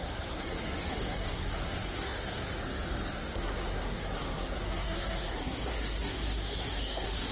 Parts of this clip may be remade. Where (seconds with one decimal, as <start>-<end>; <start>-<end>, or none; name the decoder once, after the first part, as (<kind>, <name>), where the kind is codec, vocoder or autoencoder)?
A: 0.0-2.5 (codec, SNAC); 3.1-7.3